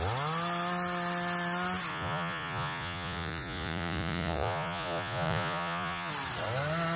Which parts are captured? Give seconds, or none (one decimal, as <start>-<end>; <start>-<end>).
0.0-1.9; 6.1-7.0